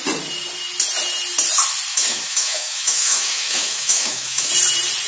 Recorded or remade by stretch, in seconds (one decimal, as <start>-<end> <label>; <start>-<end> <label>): 0.0-1.9 recorded; 1.9-4.5 remade; 4.5-5.1 recorded